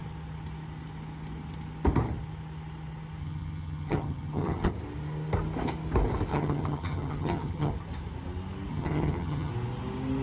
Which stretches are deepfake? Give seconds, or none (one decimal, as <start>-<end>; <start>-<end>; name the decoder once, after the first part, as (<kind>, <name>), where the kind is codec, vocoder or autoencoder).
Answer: 3.2-4.7 (vocoder, HiFi-GAN); 6.3-7.7; 8.7-9.5